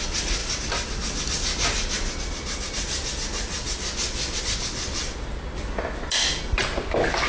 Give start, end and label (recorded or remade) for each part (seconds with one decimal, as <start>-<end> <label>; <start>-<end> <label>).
0.0-7.3 recorded